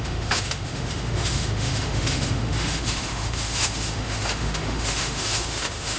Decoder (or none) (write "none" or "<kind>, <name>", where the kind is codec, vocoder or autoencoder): autoencoder, DAC-VAE